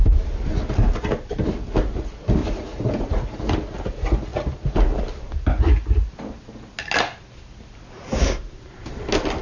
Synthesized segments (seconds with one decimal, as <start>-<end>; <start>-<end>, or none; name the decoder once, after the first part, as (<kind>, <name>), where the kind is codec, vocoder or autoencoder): 2.4-3.4 (vocoder, Vocos)